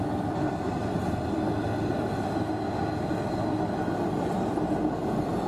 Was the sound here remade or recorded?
recorded